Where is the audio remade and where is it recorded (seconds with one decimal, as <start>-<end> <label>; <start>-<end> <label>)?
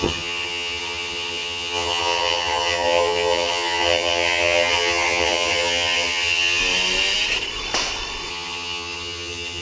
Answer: 0.0-6.6 remade; 6.6-8.3 recorded; 8.3-9.6 remade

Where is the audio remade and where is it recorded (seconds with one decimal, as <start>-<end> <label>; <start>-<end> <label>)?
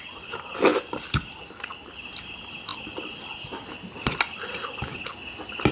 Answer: 0.0-5.7 recorded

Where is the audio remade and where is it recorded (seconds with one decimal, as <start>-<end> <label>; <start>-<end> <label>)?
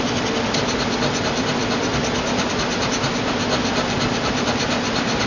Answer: 0.0-5.3 recorded